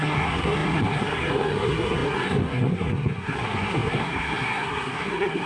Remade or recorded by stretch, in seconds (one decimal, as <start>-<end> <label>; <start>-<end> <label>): 0.0-5.5 remade